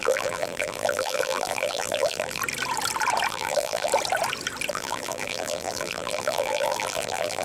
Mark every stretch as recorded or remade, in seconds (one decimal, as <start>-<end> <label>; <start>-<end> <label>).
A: 0.0-2.4 remade; 2.4-3.3 recorded; 3.3-3.9 remade; 3.9-4.7 recorded; 4.7-7.4 remade